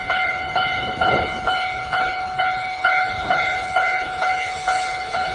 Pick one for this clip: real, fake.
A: fake